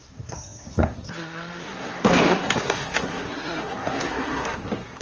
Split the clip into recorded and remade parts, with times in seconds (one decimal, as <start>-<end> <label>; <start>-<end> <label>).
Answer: 0.0-5.0 remade